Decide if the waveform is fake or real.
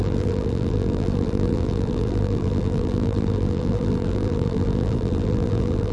fake